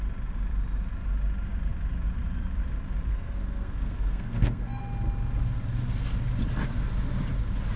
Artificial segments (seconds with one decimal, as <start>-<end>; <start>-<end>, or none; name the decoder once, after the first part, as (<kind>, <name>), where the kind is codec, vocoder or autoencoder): 3.1-4.8 (codec, SNAC)